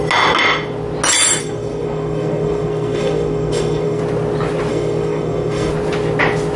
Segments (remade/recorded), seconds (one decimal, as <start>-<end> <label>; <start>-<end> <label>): 0.0-1.4 recorded; 1.4-4.0 remade; 4.0-4.7 recorded; 4.7-5.7 remade; 5.7-6.6 recorded